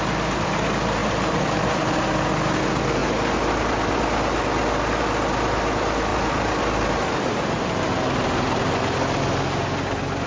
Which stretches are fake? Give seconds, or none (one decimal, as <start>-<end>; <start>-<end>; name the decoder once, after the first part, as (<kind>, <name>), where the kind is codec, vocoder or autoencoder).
1.0-2.1 (vocoder, BigVGAN v2); 6.1-8.6